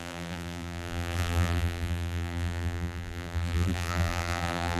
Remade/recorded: remade